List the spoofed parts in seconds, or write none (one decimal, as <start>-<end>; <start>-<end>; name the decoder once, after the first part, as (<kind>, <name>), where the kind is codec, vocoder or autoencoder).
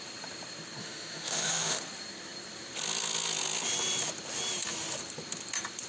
0.8-1.8 (autoencoder, DAC-VAE)